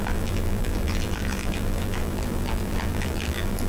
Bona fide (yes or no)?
no